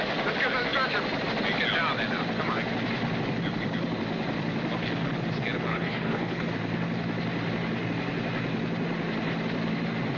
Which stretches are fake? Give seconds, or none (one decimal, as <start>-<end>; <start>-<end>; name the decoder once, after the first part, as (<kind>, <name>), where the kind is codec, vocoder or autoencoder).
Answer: 5.7-6.5 (codec, HILCodec)